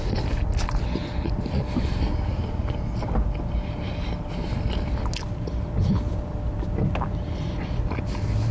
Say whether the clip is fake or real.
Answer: real